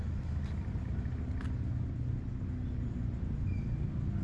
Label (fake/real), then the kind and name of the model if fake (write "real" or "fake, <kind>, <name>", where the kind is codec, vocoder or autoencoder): real